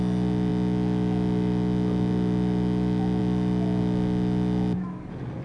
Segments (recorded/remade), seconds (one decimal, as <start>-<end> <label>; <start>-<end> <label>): 0.0-5.4 recorded